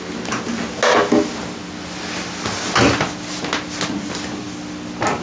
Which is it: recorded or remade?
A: recorded